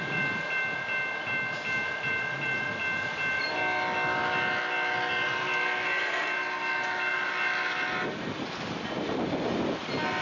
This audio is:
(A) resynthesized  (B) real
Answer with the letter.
B